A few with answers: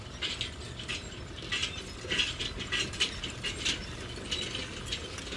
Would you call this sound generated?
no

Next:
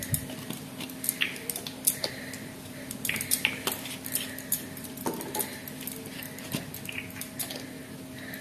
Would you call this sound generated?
no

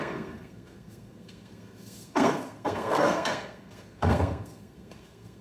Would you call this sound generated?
yes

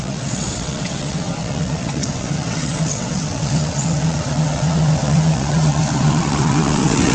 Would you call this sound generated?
yes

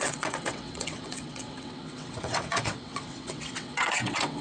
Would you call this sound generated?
yes